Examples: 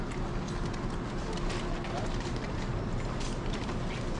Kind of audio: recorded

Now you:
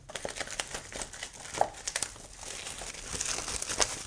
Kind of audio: recorded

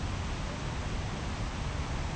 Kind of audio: recorded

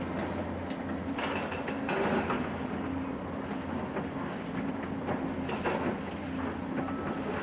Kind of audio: recorded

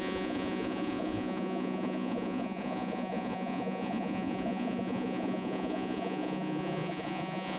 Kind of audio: remade